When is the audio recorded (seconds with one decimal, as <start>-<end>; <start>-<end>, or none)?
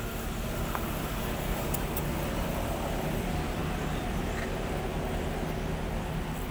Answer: 0.0-1.1; 1.8-6.5